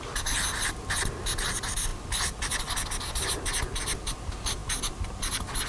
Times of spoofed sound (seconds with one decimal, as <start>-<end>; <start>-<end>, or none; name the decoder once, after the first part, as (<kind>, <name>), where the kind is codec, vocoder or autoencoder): none